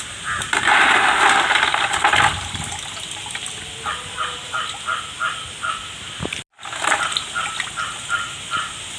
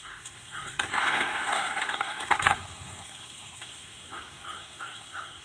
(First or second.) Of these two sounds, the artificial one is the second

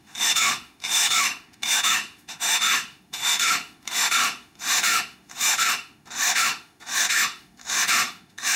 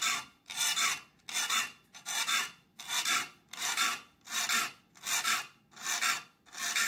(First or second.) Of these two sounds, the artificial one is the first